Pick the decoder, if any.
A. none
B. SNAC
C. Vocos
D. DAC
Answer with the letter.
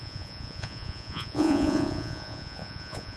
C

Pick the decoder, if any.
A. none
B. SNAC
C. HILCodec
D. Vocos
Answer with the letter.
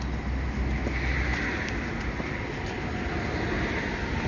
A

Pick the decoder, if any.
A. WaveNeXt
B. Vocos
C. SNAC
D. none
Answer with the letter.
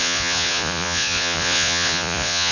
B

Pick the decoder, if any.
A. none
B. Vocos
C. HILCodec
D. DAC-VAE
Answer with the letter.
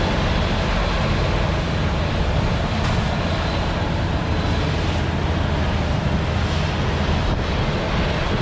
A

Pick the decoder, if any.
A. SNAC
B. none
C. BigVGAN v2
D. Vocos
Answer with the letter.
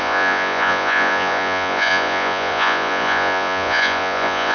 D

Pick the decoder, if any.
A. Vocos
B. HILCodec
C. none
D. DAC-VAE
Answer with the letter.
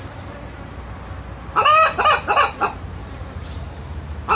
C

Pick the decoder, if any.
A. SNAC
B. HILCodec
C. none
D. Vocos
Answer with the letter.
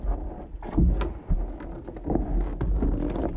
C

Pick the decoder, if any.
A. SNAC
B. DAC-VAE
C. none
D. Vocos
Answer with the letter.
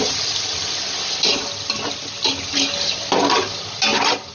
C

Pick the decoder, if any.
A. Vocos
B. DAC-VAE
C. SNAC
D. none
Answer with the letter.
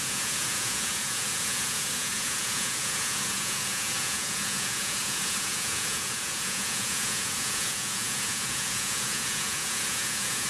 A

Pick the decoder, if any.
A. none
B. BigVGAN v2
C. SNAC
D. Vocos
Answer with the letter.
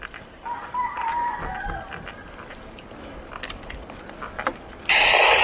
A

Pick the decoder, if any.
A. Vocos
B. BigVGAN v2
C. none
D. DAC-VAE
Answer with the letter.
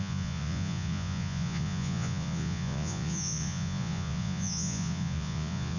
A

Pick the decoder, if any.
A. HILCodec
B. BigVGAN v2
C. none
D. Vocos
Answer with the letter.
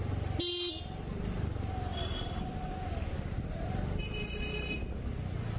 C